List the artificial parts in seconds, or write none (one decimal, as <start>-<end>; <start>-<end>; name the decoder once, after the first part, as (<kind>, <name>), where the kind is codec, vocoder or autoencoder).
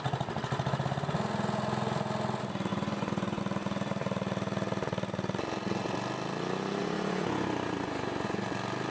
2.7-3.4 (vocoder, Vocos); 6.8-8.4